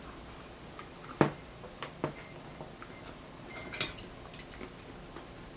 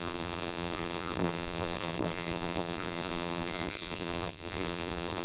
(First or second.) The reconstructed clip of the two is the second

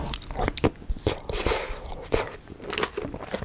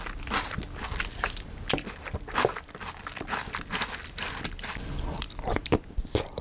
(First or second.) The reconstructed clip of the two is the second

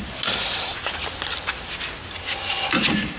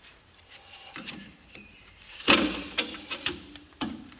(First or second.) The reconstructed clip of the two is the second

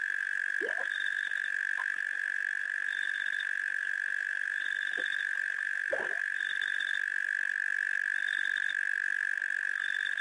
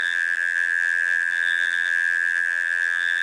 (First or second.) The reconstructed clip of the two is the second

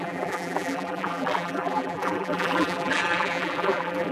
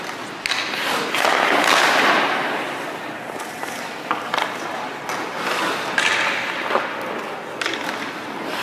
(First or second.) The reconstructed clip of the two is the first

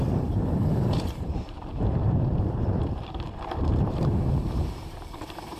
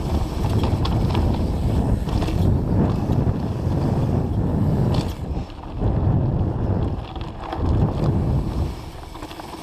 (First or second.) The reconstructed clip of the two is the first